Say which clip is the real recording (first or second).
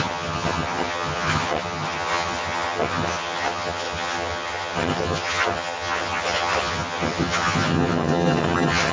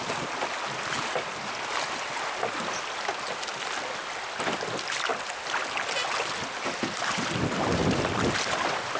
second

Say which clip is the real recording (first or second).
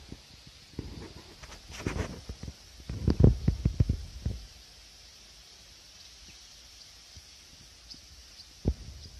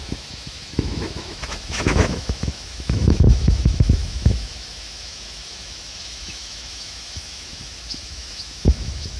first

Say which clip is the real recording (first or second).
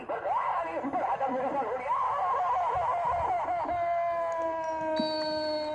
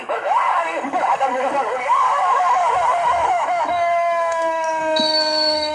first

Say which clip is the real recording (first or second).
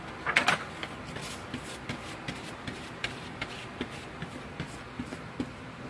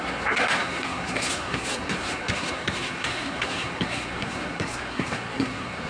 first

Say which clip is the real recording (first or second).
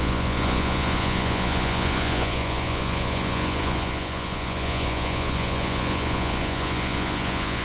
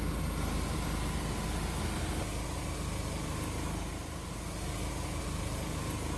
second